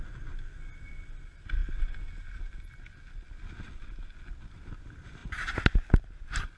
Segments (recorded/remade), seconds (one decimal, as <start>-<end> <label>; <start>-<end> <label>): 0.0-6.6 recorded